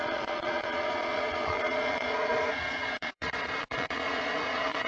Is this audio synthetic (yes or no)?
yes